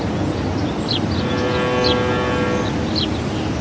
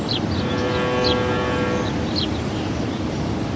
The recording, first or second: first